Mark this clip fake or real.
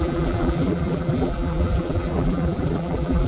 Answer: fake